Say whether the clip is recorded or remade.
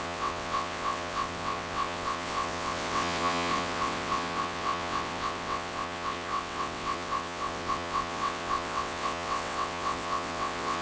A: remade